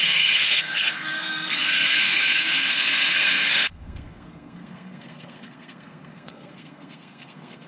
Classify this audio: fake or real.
fake